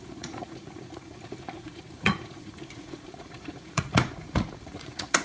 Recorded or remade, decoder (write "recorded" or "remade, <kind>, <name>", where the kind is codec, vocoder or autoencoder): remade, vocoder, Vocos